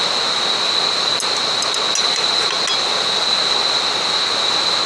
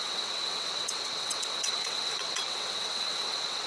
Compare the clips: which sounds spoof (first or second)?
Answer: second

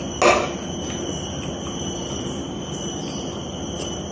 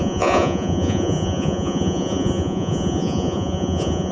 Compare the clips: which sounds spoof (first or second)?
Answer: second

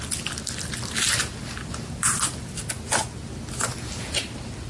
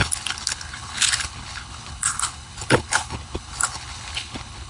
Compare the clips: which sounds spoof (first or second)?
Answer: second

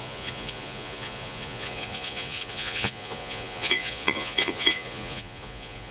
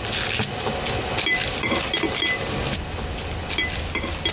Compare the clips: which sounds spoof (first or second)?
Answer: first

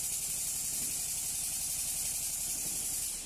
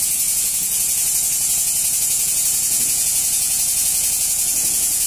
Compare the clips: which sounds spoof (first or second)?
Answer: second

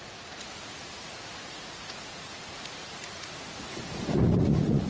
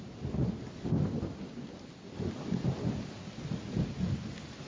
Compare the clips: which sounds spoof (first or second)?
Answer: first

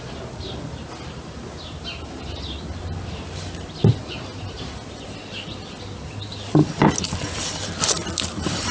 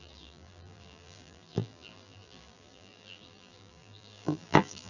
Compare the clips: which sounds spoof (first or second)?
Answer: second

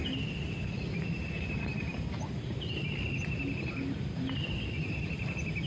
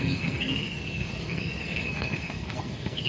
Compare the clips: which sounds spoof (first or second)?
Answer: second